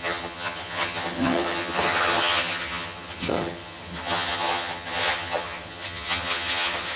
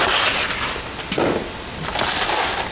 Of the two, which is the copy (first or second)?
first